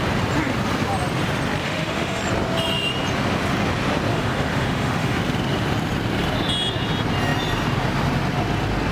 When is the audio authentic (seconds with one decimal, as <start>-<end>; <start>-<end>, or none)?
0.0-1.6; 2.2-4.1; 5.2-8.9